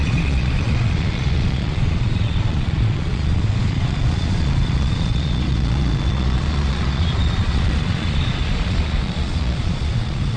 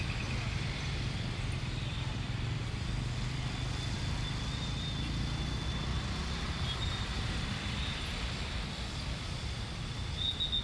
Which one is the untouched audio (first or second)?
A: second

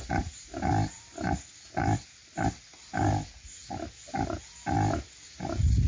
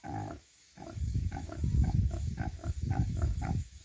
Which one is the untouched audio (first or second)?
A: first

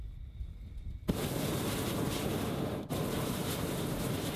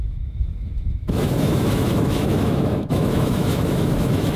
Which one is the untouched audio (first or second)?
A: first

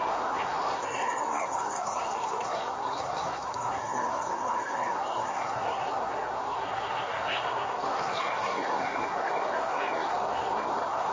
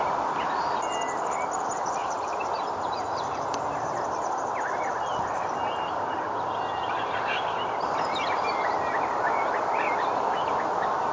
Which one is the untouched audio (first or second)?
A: second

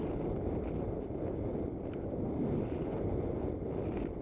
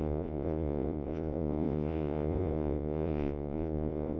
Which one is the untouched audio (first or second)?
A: first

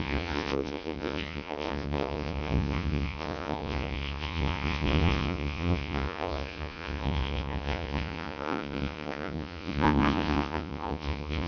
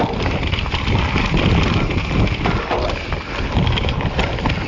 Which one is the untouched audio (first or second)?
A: second